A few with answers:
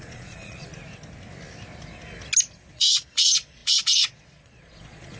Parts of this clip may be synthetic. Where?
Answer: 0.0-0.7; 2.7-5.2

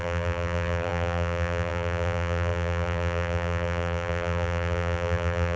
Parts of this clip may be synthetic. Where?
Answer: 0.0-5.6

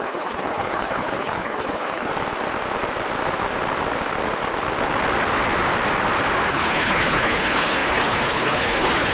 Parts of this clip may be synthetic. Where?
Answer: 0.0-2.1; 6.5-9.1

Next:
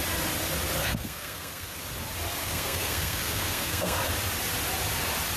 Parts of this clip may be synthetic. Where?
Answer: 0.8-1.8; 2.4-4.0

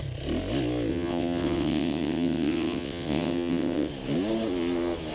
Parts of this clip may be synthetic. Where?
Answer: 0.9-3.9